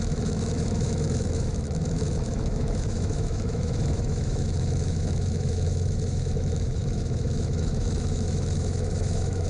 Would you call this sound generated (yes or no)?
yes